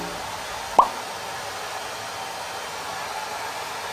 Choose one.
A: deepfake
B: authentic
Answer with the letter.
B